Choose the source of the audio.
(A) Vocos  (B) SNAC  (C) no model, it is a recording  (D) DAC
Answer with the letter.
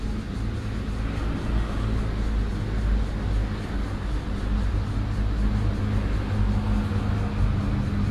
C